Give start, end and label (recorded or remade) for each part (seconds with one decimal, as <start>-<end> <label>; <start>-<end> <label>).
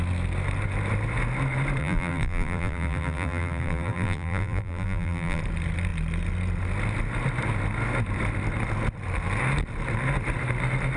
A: 0.0-1.8 recorded; 1.8-5.4 remade; 5.4-11.0 recorded